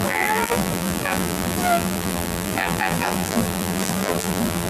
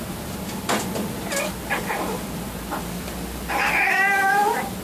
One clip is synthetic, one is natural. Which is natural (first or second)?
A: second